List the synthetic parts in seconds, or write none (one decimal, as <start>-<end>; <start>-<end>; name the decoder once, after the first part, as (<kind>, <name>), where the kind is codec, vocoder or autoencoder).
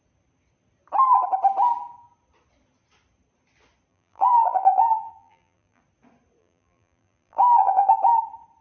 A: 3.9-5.8 (vocoder, BigVGAN v2); 6.4-7.9